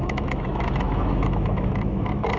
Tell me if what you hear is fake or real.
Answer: fake